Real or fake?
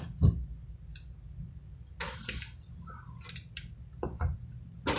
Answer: real